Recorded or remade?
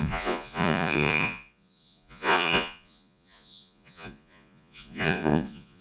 remade